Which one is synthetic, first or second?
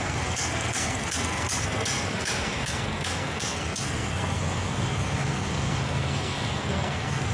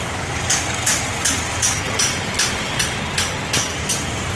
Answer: first